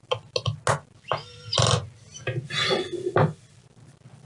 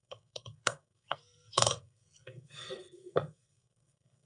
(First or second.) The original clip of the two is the first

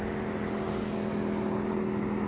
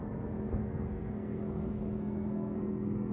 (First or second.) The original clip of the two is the first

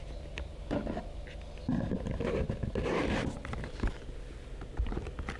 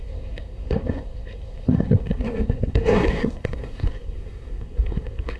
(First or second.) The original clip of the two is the first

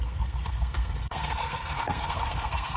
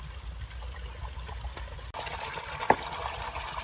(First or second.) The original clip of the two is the second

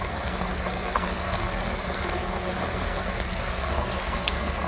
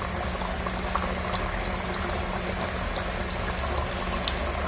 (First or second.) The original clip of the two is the second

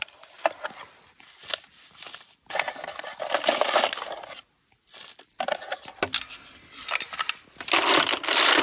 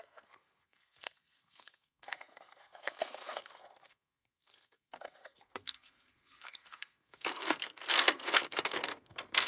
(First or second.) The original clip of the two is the first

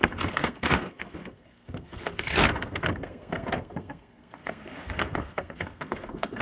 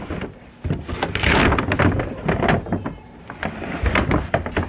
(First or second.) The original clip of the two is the second